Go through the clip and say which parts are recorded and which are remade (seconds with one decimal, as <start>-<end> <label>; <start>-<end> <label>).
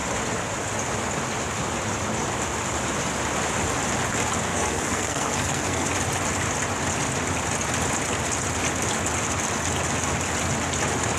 0.0-4.5 recorded; 4.5-5.9 remade; 5.9-11.2 recorded